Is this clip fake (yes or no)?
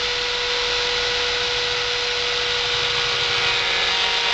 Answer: no